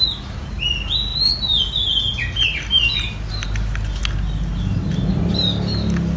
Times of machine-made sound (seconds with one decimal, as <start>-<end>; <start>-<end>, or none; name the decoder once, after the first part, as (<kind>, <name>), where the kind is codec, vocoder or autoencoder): none